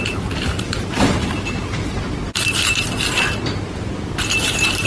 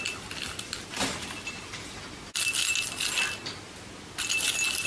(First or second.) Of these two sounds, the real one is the second